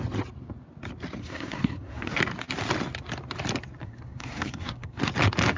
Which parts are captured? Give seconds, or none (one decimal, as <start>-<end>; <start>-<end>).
0.0-1.2; 2.2-3.8; 5.0-5.6